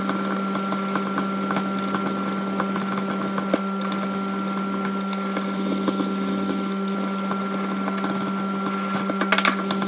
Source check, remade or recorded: recorded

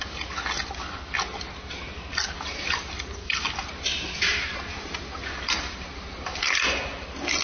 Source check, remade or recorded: recorded